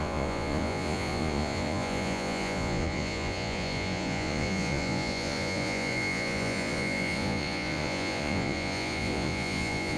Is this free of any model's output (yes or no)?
no